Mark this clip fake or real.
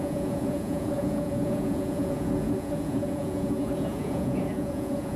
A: fake